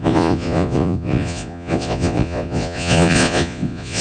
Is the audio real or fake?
fake